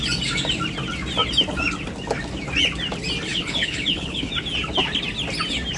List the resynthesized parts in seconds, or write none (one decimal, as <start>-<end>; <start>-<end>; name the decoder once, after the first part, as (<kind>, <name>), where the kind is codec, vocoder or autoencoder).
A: 3.3-4.3 (codec, HILCodec)